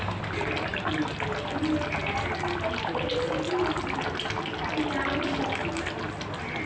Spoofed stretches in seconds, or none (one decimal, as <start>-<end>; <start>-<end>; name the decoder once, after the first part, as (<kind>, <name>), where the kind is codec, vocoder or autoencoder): none